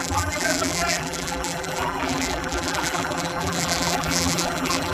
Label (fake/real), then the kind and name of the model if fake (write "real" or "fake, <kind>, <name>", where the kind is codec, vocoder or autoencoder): fake, vocoder, BigVGAN v2